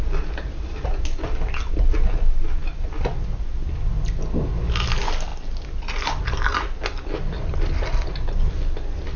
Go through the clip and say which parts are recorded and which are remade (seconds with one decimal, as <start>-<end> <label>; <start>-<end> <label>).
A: 0.0-9.2 recorded

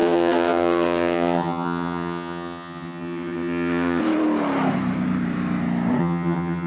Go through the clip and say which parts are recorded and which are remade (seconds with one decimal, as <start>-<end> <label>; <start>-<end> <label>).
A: 0.0-4.0 remade; 4.0-6.0 recorded; 6.0-6.7 remade

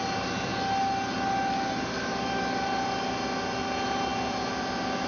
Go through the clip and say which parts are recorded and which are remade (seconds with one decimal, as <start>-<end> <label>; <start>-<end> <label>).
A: 0.0-5.1 recorded

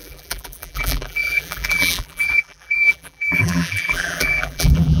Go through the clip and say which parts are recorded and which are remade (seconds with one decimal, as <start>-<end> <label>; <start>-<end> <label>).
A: 0.0-5.0 remade

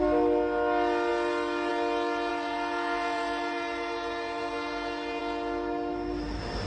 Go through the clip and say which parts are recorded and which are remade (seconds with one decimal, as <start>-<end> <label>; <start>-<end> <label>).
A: 0.0-2.3 recorded; 2.3-5.2 remade; 5.2-6.7 recorded